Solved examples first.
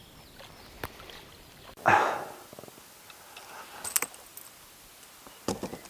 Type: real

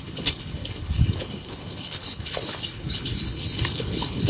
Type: fake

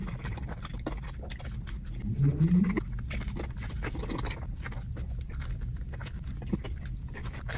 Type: real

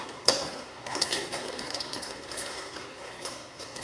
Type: fake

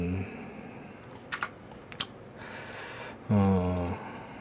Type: real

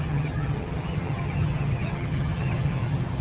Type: fake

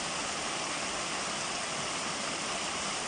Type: real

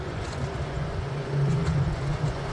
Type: fake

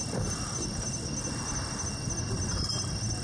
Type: real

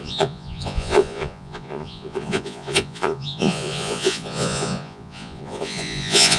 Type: fake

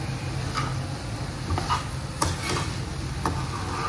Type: real